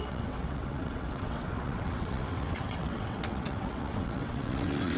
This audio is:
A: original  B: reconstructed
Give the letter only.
B